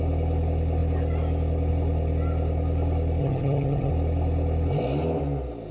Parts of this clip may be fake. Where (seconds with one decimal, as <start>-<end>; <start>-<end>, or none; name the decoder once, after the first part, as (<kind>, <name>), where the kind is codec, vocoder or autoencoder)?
3.2-3.9 (vocoder, HiFi-GAN)